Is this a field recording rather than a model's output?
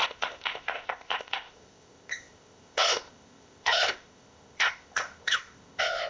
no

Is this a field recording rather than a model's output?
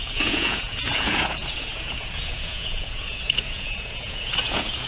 no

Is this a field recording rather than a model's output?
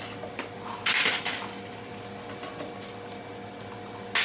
yes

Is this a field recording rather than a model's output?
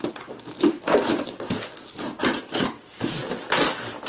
yes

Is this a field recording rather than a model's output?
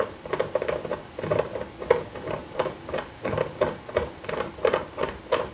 yes